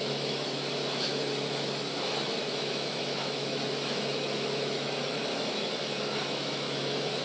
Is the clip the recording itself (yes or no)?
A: no